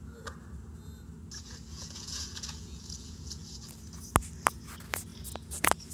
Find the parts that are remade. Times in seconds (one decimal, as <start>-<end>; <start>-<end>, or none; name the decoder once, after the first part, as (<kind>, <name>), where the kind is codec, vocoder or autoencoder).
1.7-3.4 (vocoder, Vocos)